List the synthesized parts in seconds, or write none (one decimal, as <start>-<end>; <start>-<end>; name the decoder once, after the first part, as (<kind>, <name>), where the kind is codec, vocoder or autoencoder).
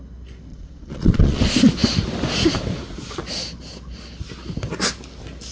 0.5-1.4 (vocoder, Vocos)